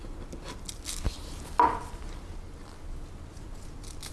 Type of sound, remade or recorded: recorded